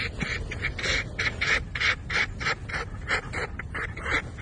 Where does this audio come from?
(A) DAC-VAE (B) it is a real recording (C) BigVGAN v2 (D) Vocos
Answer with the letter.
B